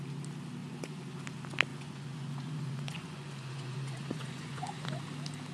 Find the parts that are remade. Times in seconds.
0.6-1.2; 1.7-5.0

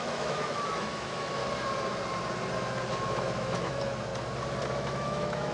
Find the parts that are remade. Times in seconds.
0.0-1.4; 2.9-4.1; 4.7-5.5

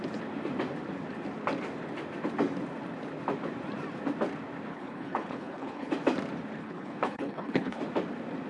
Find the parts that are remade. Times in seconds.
4.7-5.9; 6.6-7.8

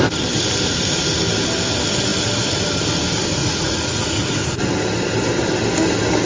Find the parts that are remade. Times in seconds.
3.4-4.6

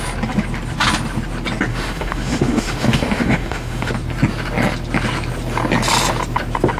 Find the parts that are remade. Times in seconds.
1.7-3.9

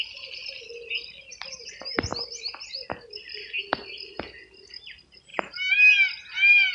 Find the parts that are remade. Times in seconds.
5.3-5.9